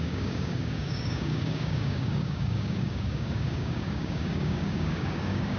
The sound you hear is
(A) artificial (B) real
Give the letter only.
A